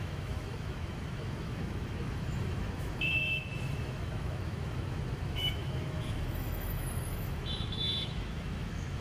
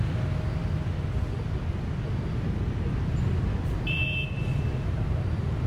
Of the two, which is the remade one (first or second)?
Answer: first